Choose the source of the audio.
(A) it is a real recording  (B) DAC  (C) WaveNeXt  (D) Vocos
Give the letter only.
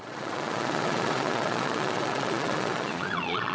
D